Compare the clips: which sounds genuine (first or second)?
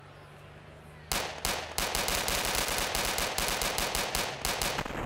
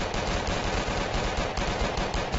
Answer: first